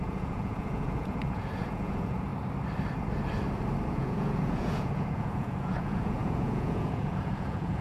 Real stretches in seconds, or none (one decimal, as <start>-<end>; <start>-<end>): 2.3-3.9